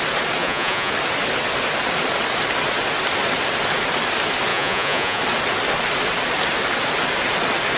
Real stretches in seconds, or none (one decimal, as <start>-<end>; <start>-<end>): 0.0-0.4; 0.9-4.5; 5.2-7.8